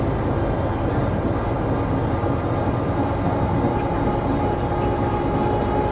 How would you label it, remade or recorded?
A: recorded